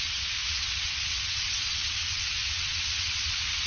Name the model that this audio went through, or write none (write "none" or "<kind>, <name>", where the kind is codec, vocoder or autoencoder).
vocoder, WaveNeXt